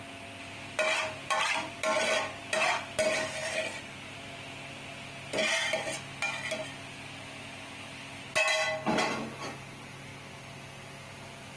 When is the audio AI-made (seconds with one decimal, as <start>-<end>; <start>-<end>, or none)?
none